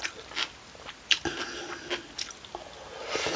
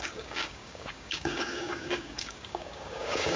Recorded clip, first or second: first